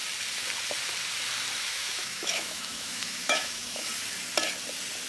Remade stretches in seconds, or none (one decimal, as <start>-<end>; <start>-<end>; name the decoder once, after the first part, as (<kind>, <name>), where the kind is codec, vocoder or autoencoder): 1.6-3.9 (autoencoder, DAC-VAE)